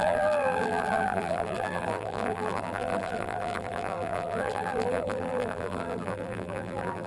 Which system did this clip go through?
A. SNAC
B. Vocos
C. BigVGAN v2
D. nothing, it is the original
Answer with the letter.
C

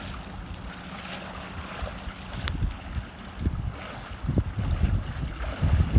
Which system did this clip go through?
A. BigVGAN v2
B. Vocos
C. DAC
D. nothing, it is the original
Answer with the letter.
D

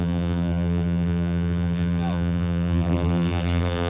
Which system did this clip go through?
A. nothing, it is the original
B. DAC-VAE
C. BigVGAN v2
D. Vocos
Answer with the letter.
C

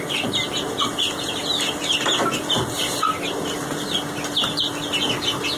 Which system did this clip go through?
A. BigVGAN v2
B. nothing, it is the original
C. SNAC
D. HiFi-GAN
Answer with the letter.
B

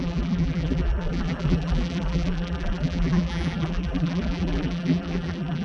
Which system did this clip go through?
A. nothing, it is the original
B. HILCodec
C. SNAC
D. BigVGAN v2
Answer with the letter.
D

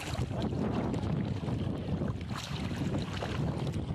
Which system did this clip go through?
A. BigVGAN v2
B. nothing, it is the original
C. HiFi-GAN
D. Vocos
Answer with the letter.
A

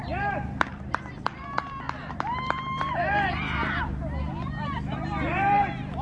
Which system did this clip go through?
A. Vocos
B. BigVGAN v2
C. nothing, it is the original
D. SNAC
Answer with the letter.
B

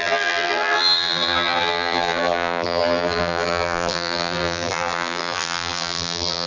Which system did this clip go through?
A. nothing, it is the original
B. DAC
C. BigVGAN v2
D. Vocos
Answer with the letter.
C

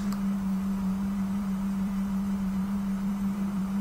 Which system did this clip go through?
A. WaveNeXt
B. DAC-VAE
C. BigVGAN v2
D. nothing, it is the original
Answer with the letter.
C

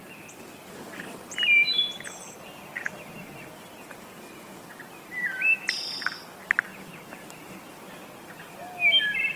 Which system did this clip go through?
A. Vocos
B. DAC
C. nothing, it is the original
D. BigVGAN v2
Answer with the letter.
C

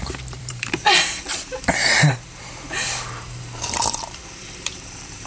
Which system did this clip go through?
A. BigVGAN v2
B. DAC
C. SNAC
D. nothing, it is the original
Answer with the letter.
A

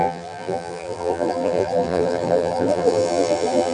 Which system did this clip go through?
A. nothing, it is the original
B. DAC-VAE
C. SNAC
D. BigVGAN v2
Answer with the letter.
D